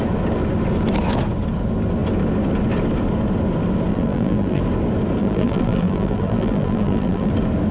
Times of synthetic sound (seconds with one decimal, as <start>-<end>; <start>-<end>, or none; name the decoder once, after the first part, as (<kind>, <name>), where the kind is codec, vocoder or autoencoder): 3.9-4.6 (vocoder, BigVGAN v2); 5.2-7.3